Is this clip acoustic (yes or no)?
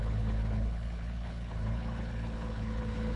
no